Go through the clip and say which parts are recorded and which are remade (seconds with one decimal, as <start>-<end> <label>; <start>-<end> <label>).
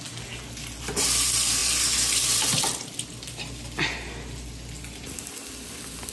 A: 0.0-6.1 recorded